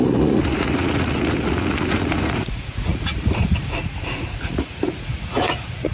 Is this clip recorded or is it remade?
remade